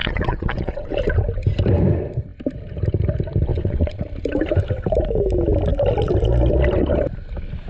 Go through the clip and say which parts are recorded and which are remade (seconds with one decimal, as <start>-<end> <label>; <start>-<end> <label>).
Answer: 0.0-0.9 remade; 0.9-3.5 recorded; 3.5-4.0 remade; 4.0-7.7 recorded